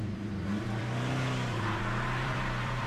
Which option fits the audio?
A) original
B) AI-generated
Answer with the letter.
B